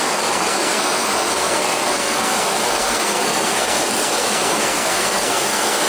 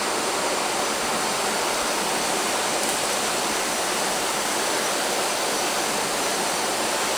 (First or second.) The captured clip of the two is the second